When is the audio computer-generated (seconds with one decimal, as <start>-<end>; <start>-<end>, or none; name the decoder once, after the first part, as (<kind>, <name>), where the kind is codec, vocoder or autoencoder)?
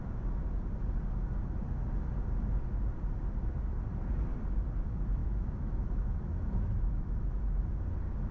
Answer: 5.2-7.6 (autoencoder, DAC-VAE)